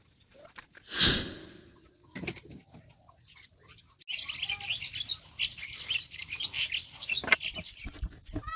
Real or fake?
real